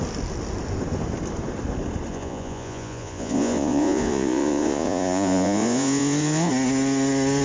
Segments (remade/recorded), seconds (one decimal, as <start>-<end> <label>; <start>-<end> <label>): 0.0-2.1 recorded; 2.1-6.5 remade; 6.5-7.4 recorded